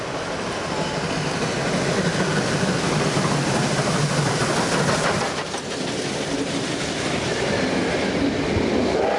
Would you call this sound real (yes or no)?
yes